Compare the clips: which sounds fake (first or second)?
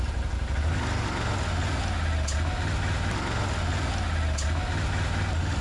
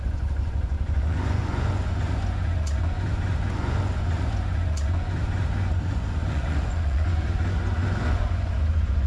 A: second